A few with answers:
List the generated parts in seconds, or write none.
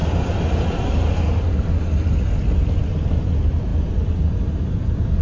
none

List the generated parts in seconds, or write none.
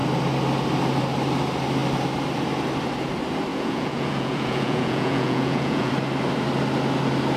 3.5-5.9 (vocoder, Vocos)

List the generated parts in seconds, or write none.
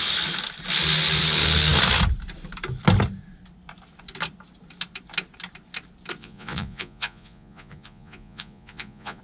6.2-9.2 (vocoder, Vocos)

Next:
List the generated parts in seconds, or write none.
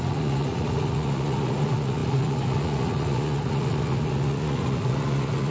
0.0-5.5 (vocoder, Vocos)